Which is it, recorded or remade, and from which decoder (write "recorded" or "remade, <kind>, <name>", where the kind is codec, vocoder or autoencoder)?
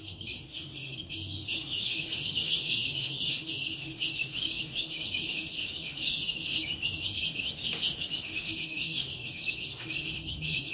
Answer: remade, autoencoder, DAC-VAE